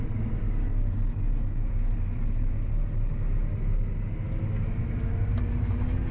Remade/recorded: recorded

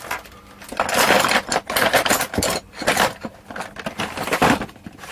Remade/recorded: recorded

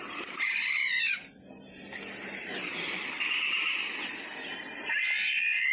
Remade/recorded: remade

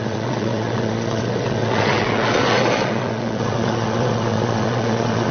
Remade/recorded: remade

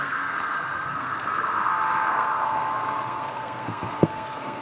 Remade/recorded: remade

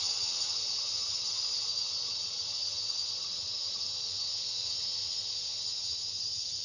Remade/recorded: remade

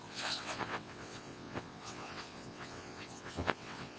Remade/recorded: remade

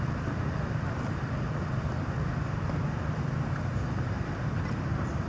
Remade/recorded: recorded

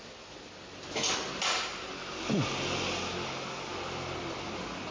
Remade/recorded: recorded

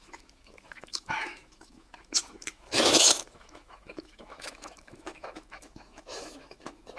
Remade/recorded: remade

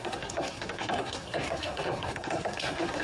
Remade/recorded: remade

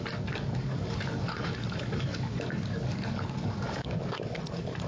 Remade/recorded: remade